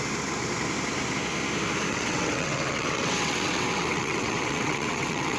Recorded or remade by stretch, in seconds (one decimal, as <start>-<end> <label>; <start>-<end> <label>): 0.0-1.9 recorded; 1.9-5.4 remade